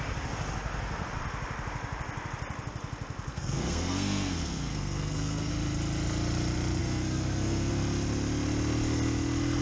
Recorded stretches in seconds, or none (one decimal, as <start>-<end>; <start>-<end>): 0.0-3.3; 5.5-6.8; 7.7-9.6